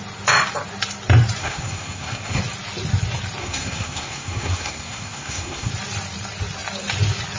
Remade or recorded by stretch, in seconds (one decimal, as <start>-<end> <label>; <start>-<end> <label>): 0.0-1.4 recorded; 1.4-2.4 remade; 2.4-3.4 recorded; 3.4-5.7 remade; 5.7-7.4 recorded